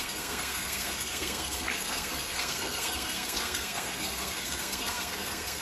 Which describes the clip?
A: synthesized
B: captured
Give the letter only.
A